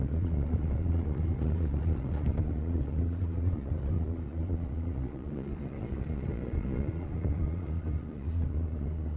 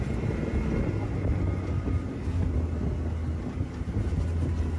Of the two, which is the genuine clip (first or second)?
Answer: second